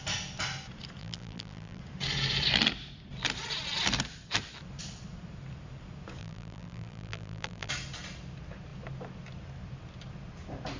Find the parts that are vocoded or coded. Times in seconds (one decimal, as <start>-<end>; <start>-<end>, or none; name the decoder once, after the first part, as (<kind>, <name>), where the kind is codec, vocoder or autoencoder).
1.0-1.8 (vocoder, BigVGAN v2); 6.2-7.7